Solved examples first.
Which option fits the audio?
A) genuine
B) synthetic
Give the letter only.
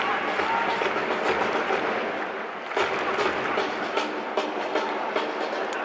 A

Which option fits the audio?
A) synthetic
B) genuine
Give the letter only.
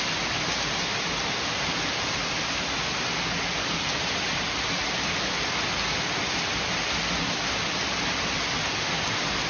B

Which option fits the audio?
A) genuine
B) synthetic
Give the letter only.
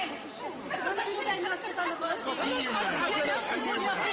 A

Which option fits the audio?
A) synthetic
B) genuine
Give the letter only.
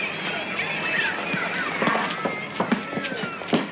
B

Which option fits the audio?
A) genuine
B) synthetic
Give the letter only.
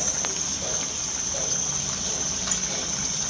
A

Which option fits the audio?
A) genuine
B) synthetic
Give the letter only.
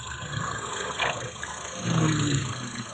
B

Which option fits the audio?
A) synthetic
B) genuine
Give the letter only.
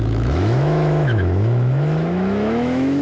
A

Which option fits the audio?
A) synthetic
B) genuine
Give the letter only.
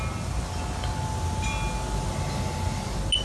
B